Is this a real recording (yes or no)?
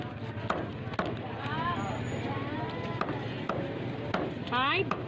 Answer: yes